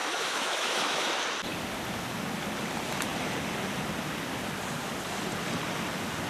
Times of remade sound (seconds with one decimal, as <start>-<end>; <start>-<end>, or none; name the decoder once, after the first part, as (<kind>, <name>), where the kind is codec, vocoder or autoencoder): 0.0-1.1 (autoencoder, DAC-VAE)